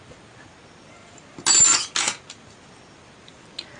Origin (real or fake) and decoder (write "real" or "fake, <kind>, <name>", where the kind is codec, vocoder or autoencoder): real